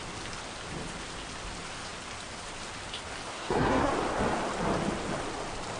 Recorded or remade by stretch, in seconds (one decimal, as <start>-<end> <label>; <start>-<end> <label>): 0.0-3.3 recorded; 3.3-3.9 remade; 3.9-5.8 recorded